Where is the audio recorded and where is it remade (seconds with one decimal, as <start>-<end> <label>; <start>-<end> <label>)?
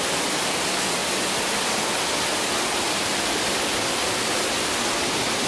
0.0-5.5 recorded